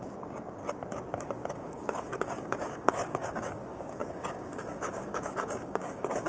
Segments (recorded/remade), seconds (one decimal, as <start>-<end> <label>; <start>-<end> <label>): 0.0-0.6 remade; 0.6-1.5 recorded; 1.5-6.3 remade